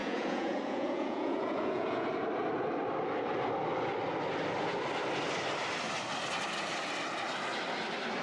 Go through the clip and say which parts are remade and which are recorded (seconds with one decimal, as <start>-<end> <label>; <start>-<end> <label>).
0.0-2.1 remade; 2.1-8.2 recorded